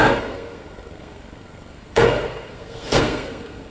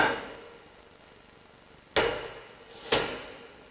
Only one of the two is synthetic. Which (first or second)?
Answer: first